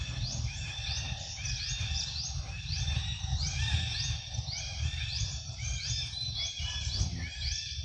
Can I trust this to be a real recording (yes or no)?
no